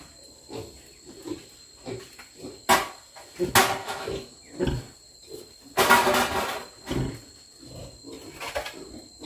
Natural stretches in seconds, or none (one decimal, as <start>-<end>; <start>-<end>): 0.0-3.8; 4.4-9.3